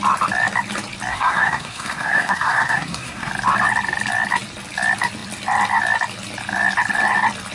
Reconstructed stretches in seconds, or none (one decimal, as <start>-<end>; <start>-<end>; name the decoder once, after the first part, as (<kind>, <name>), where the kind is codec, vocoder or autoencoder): 1.1-3.3 (codec, SNAC)